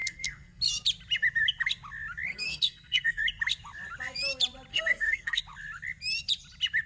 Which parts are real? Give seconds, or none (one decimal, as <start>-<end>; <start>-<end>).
0.6-2.3; 3.2-4.7; 5.4-6.9